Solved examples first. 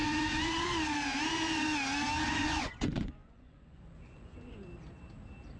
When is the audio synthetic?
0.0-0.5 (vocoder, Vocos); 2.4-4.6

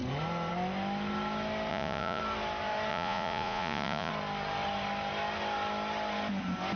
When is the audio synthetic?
1.7-2.2 (vocoder, Vocos); 2.9-4.1

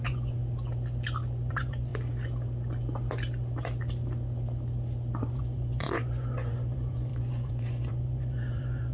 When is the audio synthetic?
0.0-0.4 (vocoder, Vocos); 1.5-1.9; 5.2-8.9

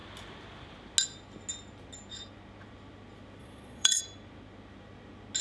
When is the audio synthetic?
3.4-4.0 (vocoder, Vocos)

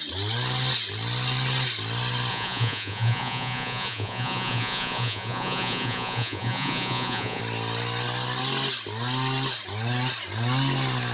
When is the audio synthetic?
2.3-7.4 (vocoder, Vocos)